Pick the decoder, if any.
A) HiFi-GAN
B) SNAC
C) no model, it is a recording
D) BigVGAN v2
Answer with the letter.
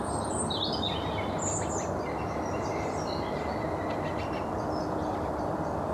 C